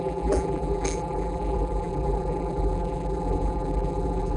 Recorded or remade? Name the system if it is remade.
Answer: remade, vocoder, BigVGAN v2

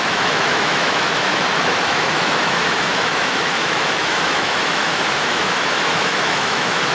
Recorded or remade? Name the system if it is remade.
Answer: remade, autoencoder, DAC-VAE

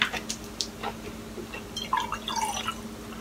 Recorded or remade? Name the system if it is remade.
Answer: recorded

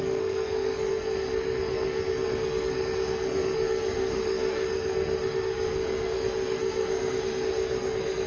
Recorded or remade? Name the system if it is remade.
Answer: remade, codec, SNAC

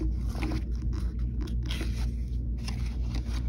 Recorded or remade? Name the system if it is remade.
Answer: recorded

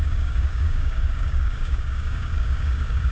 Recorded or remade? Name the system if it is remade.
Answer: remade, codec, DAC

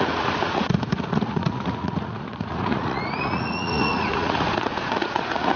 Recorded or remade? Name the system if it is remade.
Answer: remade, vocoder, Vocos